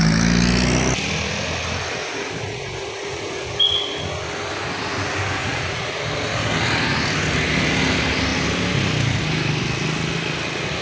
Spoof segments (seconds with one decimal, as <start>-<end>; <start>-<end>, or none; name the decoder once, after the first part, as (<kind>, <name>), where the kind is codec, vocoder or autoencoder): 2.0-3.5 (vocoder, Vocos); 5.4-6.0